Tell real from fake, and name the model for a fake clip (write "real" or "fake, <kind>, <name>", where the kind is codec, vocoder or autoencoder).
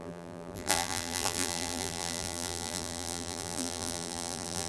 fake, vocoder, BigVGAN v2